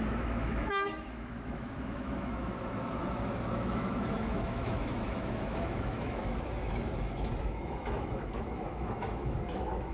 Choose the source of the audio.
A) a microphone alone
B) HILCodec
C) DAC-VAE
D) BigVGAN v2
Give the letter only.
C